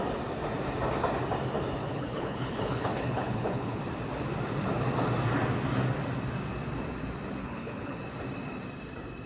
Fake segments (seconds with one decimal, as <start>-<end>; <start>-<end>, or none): 1.8-3.8; 7.4-8.0